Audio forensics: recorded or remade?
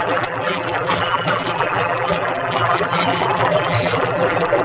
remade